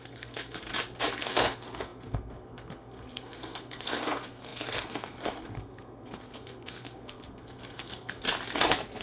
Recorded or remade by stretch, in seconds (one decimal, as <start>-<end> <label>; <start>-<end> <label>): 0.0-0.7 remade; 0.7-1.2 recorded; 1.2-8.2 remade; 8.2-9.0 recorded